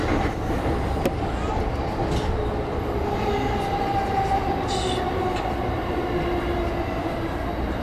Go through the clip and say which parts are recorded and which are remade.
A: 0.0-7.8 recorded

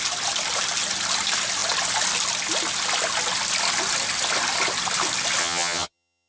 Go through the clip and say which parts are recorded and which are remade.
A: 0.0-5.4 recorded; 5.4-6.3 remade

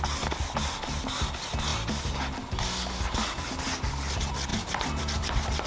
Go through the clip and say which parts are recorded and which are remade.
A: 0.0-5.7 recorded

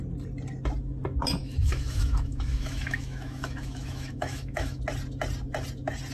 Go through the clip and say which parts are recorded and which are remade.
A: 0.0-1.4 recorded; 1.4-4.8 remade; 4.8-6.1 recorded

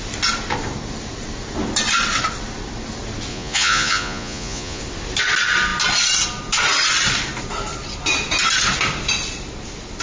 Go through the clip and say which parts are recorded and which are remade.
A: 0.0-3.3 recorded; 3.3-4.8 remade; 4.8-10.0 recorded

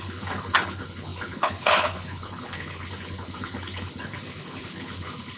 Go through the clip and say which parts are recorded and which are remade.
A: 0.0-5.4 remade

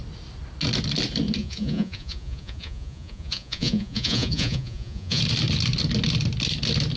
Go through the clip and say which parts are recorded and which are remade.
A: 0.0-1.4 recorded; 1.4-5.2 remade; 5.2-7.0 recorded